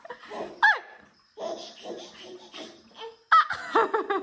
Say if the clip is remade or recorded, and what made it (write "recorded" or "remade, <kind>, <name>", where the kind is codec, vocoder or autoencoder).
recorded